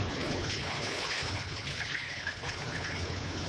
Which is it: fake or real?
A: fake